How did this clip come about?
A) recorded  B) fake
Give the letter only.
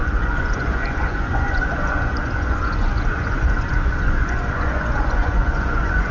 B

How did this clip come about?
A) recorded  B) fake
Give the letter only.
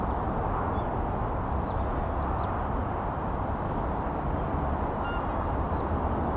A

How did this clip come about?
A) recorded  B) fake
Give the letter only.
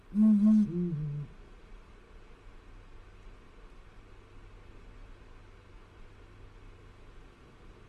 A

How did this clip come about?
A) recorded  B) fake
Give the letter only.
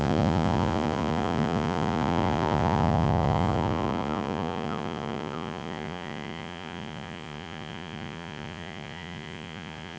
B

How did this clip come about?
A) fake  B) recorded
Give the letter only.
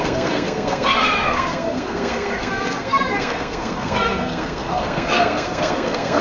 A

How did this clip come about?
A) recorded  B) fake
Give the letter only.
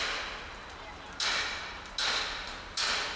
A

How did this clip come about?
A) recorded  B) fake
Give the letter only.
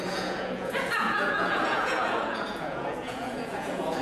B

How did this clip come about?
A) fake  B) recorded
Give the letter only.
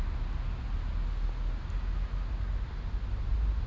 B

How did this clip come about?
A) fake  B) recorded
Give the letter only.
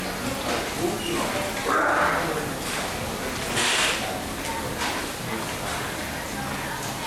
B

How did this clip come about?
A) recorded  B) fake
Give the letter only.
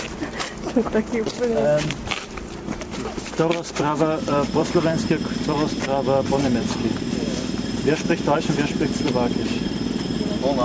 B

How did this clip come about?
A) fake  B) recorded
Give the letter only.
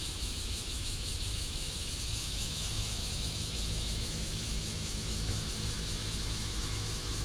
A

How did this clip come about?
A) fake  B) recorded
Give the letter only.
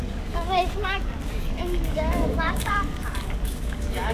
A